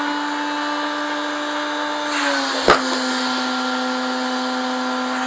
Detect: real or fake real